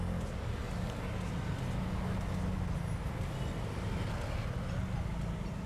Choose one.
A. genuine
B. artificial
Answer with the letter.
A